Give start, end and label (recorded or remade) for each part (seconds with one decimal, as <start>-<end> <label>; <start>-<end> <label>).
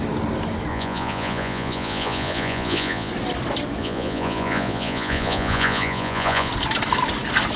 0.0-0.7 recorded; 0.7-3.1 remade; 3.1-3.8 recorded; 3.8-6.5 remade; 6.5-7.6 recorded